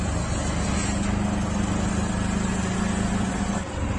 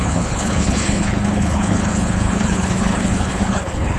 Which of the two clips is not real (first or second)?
second